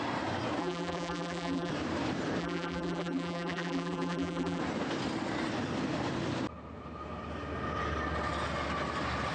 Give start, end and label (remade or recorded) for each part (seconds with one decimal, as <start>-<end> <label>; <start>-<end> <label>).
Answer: 0.0-0.6 recorded; 0.6-1.7 remade; 1.7-2.4 recorded; 2.4-4.6 remade; 4.6-9.3 recorded